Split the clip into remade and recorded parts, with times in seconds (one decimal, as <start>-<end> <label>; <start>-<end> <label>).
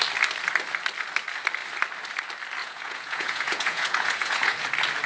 0.0-2.6 recorded; 2.6-4.6 remade; 4.6-5.1 recorded